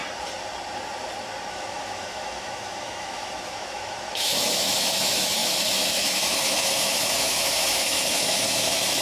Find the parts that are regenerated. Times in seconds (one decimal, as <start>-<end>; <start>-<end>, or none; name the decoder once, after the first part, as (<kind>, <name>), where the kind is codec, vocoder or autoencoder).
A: 1.5-9.0 (autoencoder, DAC-VAE)